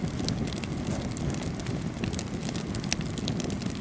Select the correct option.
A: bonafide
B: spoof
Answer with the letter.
A